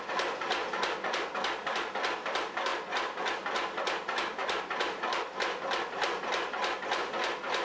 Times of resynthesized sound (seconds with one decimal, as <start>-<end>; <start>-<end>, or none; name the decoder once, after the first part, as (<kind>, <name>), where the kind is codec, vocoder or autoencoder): none